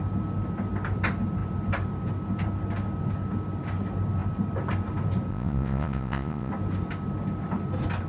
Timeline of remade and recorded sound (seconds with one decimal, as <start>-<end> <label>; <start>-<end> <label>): 0.0-5.3 recorded; 5.3-6.5 remade; 6.5-8.1 recorded